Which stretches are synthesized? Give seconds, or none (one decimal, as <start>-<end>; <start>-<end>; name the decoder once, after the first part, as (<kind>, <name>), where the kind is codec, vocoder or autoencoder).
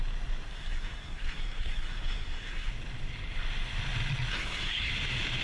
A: 0.5-2.7 (codec, SNAC); 4.3-4.9